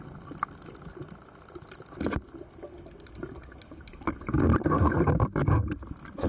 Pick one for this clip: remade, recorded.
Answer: recorded